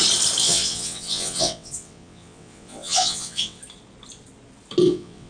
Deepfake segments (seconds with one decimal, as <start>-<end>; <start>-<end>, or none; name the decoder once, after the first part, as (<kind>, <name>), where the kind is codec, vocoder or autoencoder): 0.4-3.6 (vocoder, WaveNeXt); 4.8-5.3